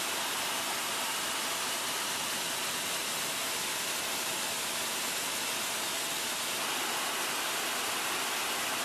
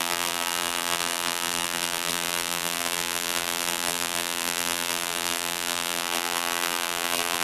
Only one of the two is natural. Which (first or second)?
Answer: first